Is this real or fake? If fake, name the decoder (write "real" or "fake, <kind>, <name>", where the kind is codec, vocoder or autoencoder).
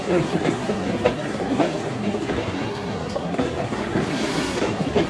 fake, codec, SNAC